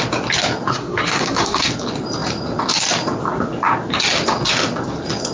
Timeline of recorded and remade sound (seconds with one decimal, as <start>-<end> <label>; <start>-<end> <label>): 0.0-0.7 recorded; 0.7-1.7 remade; 1.7-5.3 recorded